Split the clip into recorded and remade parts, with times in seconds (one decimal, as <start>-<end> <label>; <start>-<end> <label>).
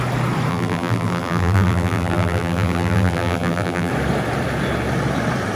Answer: 0.0-0.5 recorded; 0.5-3.9 remade; 3.9-5.6 recorded